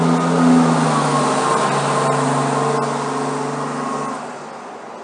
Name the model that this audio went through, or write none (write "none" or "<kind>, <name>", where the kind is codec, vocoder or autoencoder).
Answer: none